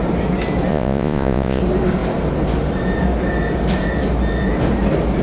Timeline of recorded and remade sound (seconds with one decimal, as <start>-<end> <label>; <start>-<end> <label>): 0.0-0.7 recorded; 0.7-1.6 remade; 1.6-5.2 recorded